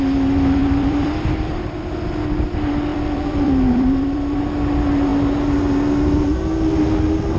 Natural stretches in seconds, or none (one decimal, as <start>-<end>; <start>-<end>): 0.0-0.6; 1.8-2.9; 4.4-7.4